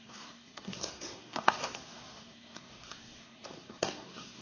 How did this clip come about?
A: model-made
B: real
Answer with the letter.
A